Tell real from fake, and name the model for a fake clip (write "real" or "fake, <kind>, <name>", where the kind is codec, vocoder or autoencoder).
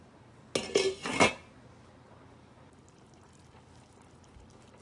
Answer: real